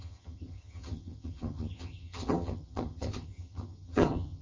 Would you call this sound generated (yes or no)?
yes